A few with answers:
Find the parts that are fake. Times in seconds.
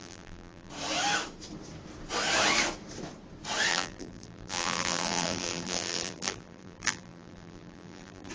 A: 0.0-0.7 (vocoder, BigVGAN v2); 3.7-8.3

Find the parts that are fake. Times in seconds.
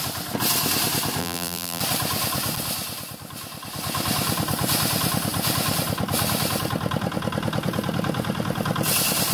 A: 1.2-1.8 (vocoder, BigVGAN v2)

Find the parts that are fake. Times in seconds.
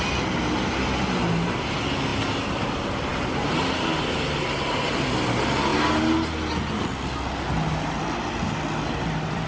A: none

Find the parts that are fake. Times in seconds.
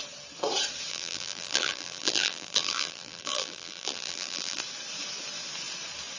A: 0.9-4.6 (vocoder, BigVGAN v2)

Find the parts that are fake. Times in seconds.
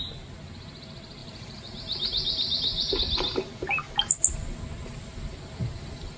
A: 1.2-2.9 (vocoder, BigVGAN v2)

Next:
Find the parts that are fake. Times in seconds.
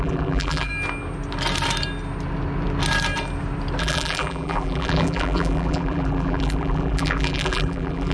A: 0.0-0.7 (vocoder, BigVGAN v2); 3.8-8.1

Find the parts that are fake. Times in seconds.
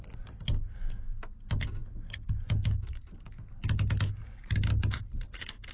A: none